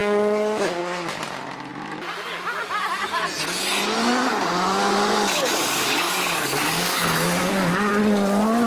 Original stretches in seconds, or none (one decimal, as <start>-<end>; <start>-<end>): 0.8-4.3; 7.9-8.7